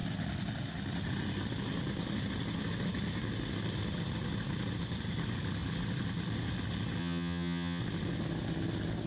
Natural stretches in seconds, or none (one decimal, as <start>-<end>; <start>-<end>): 0.0-7.0; 7.8-9.1